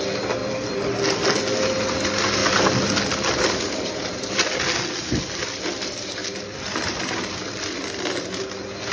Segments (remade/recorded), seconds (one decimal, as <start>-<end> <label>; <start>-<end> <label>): 0.0-0.4 recorded; 0.4-1.0 remade; 1.0-2.4 recorded; 2.4-4.3 remade; 4.3-6.2 recorded; 6.2-7.4 remade; 7.4-8.9 recorded